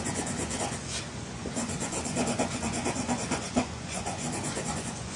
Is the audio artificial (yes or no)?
yes